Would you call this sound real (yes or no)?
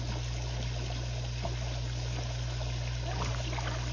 yes